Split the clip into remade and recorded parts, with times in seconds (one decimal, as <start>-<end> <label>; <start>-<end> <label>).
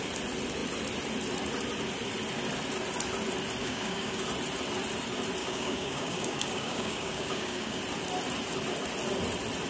0.0-3.6 recorded; 3.6-4.2 remade; 4.2-5.4 recorded; 5.4-7.8 remade; 7.8-9.7 recorded